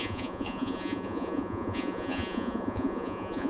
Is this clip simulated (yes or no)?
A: yes